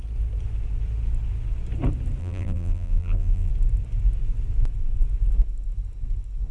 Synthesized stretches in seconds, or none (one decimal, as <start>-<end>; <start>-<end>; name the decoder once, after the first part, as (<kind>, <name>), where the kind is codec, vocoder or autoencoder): 2.2-3.5 (vocoder, BigVGAN v2)